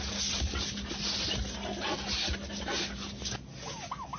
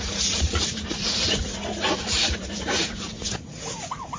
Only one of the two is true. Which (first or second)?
first